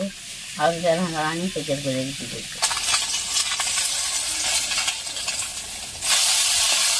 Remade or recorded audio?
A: recorded